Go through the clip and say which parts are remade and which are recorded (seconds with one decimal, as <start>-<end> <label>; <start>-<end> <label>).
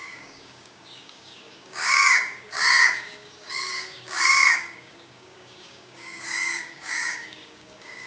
0.0-8.1 remade